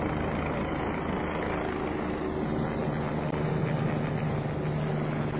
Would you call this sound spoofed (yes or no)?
no